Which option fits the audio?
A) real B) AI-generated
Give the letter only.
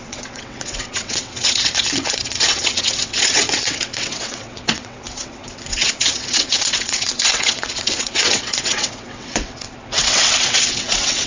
B